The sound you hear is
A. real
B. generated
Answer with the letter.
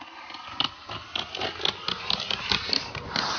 A